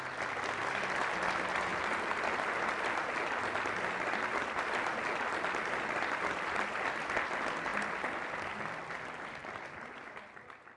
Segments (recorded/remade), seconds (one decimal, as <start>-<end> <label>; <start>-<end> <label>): 0.0-10.8 recorded